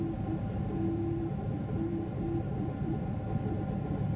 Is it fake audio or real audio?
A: real